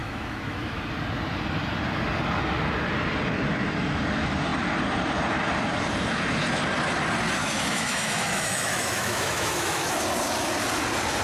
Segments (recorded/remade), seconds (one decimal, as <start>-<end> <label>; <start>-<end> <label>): 0.0-0.8 remade; 0.8-7.4 recorded; 7.4-9.9 remade; 9.9-11.2 recorded